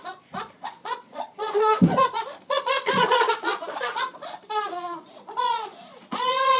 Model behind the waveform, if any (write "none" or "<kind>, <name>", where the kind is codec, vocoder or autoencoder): vocoder, Vocos